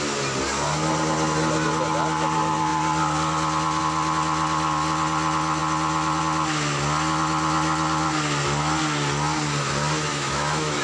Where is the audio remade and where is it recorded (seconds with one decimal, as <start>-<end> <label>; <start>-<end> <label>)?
0.0-10.1 recorded; 10.1-10.8 remade